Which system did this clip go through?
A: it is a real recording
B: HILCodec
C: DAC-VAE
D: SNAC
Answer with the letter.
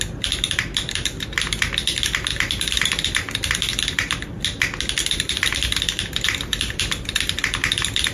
A